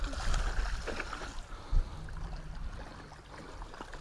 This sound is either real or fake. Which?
real